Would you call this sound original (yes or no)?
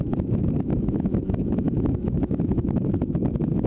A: no